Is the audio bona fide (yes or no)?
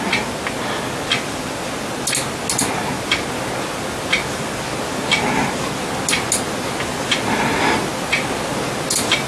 yes